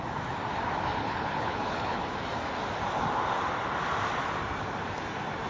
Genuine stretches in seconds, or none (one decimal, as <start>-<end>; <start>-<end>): 0.0-1.0; 2.0-5.5